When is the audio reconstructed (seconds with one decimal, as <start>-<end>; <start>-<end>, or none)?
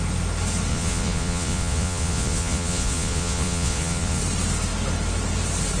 0.7-4.2